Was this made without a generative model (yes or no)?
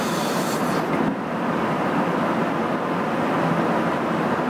yes